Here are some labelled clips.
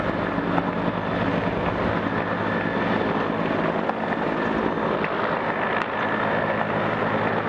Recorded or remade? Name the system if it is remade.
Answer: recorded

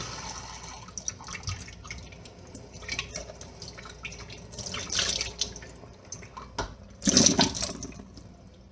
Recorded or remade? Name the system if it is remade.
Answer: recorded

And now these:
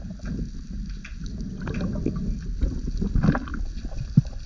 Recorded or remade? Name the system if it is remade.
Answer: recorded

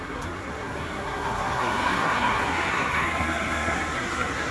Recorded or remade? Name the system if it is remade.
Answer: remade, codec, SNAC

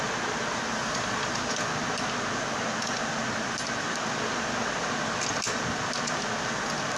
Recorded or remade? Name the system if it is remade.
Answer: recorded